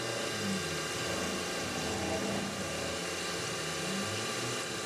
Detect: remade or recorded recorded